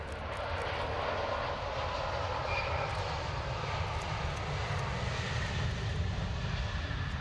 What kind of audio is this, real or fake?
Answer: real